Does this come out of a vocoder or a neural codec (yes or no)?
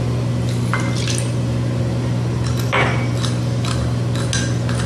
no